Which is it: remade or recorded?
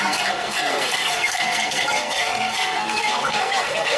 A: remade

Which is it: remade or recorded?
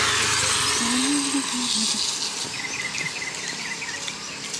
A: recorded